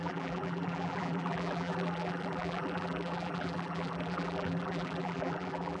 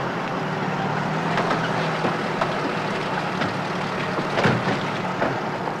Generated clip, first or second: first